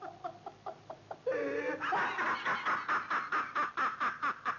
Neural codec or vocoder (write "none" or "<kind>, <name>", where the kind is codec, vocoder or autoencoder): none